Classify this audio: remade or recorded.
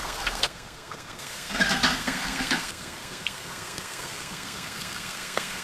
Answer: remade